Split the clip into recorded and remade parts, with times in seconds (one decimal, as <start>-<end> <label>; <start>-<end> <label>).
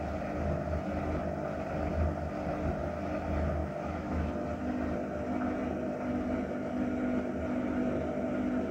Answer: 0.0-3.6 recorded; 3.6-4.3 remade; 4.3-8.7 recorded